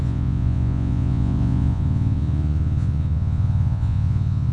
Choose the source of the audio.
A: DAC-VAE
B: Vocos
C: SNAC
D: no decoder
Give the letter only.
B